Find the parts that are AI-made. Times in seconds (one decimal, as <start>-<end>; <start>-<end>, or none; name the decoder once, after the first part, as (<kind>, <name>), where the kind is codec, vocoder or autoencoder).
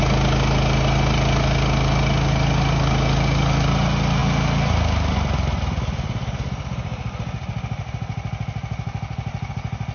none